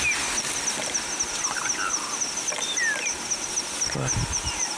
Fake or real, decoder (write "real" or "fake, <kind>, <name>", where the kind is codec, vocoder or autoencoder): real